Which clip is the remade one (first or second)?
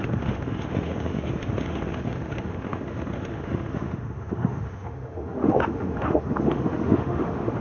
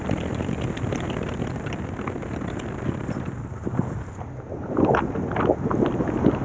first